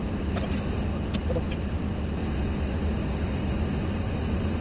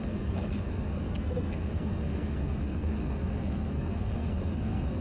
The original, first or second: first